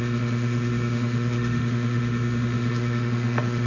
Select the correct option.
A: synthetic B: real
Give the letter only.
A